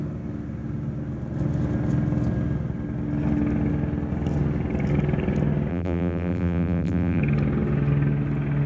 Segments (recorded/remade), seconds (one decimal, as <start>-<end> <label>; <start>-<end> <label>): 0.0-5.7 recorded; 5.7-7.2 remade; 7.2-8.7 recorded